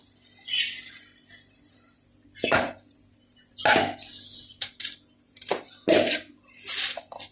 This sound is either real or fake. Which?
real